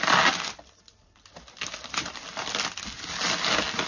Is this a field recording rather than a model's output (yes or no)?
yes